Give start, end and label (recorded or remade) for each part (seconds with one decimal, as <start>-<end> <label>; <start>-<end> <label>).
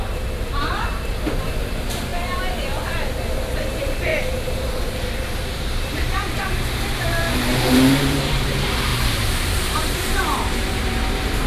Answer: 0.0-2.1 remade; 2.1-3.5 recorded; 3.5-4.1 remade; 4.1-5.2 recorded; 5.2-11.5 remade